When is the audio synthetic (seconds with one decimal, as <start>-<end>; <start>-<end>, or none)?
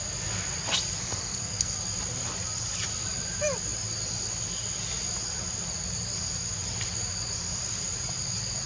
1.0-1.8